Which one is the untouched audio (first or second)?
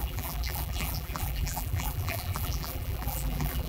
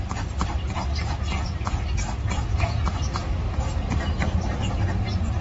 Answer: second